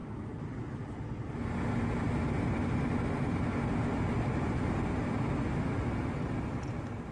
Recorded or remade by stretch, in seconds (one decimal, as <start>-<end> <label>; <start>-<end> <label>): 0.0-7.1 recorded